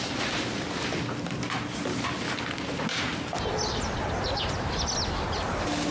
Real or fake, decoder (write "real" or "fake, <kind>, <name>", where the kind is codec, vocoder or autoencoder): real